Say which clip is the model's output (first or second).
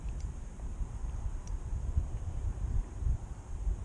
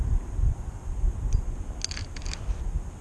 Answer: first